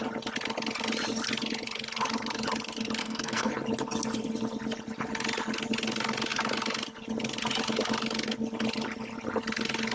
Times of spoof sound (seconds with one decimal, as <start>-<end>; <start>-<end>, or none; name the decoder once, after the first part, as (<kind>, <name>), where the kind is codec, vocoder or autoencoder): 3.0-3.5 (codec, SNAC)